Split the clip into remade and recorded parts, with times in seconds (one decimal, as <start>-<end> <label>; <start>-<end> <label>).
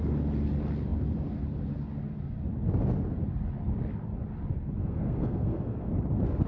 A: 0.0-4.8 recorded; 4.8-5.9 remade; 5.9-6.5 recorded